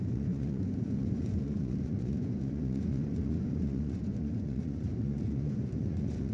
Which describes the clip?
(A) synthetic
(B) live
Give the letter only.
A